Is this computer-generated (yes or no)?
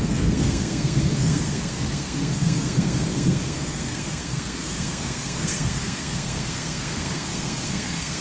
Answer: yes